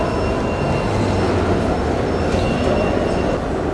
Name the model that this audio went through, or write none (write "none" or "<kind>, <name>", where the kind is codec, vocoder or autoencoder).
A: none